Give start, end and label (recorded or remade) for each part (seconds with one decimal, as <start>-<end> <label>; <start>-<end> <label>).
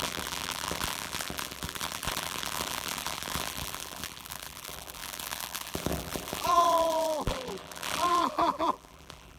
0.0-9.4 remade